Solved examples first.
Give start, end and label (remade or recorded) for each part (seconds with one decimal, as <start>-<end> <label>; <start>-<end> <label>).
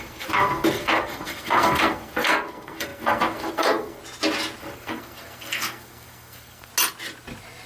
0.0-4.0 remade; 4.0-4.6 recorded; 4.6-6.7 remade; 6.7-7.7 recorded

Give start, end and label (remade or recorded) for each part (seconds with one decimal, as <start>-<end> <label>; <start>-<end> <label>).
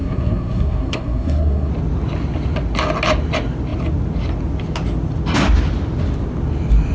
0.0-1.7 remade; 1.7-6.9 recorded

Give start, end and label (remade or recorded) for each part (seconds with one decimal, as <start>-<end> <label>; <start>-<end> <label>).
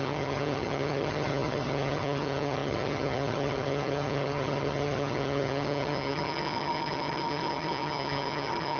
0.0-8.8 remade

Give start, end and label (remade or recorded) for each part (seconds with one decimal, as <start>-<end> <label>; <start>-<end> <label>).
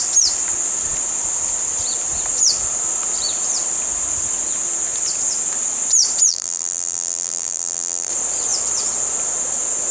0.0-6.3 recorded; 6.3-8.1 remade; 8.1-9.9 recorded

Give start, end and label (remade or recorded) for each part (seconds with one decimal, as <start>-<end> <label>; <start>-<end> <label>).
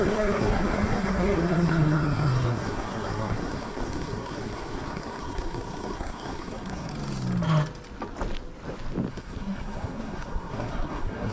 0.0-6.9 remade; 6.9-9.1 recorded; 9.1-11.3 remade